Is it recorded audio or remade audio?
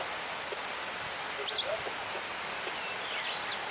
recorded